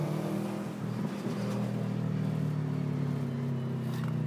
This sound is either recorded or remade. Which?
recorded